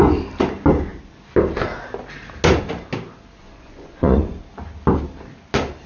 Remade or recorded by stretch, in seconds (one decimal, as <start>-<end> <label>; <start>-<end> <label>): 0.0-3.4 recorded; 3.4-4.4 remade; 4.4-5.9 recorded